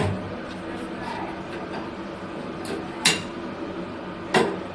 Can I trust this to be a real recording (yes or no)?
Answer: yes